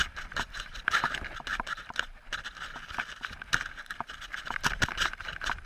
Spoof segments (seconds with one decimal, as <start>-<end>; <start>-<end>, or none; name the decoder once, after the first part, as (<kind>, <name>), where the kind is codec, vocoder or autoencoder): 1.5-4.9 (vocoder, BigVGAN v2)